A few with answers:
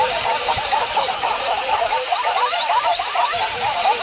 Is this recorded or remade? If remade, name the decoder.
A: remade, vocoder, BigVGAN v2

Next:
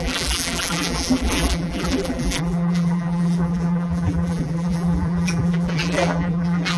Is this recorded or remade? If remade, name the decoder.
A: remade, vocoder, BigVGAN v2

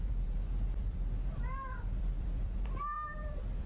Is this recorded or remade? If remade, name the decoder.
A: remade, vocoder, BigVGAN v2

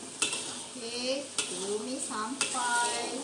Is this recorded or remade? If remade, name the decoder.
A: recorded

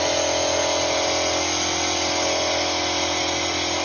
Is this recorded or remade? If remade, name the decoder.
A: recorded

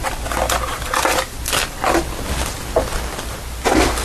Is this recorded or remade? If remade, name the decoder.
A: recorded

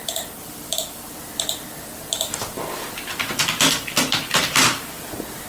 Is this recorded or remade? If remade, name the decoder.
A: remade, vocoder, BigVGAN v2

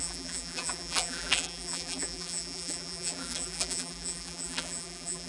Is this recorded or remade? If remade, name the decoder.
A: remade, vocoder, BigVGAN v2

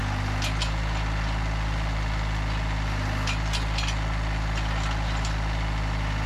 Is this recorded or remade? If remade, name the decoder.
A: recorded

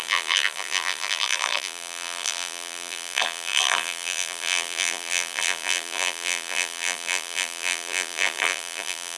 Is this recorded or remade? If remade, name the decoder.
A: remade, vocoder, BigVGAN v2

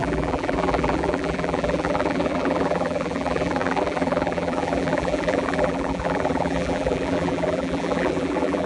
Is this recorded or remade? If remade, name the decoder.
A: remade, vocoder, BigVGAN v2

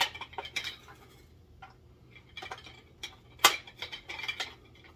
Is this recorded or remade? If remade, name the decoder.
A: recorded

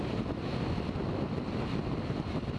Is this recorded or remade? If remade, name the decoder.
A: recorded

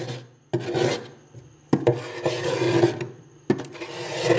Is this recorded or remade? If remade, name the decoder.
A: recorded